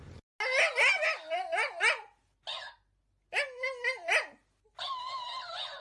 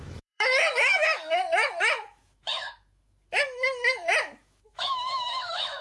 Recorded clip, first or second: first